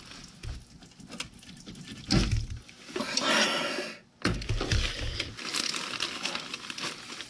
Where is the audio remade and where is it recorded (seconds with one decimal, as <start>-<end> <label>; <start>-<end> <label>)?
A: 0.0-7.3 recorded